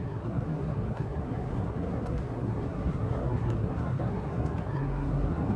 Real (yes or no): no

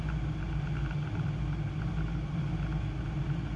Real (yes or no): yes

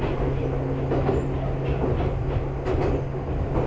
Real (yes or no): yes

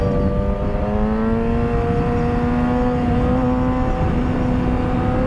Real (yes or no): yes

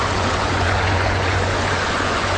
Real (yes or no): no